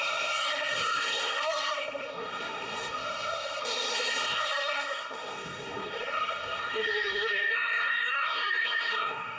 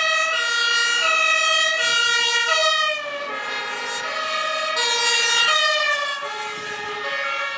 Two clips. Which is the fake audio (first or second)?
first